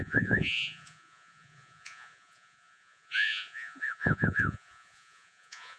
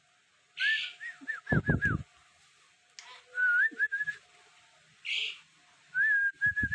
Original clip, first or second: second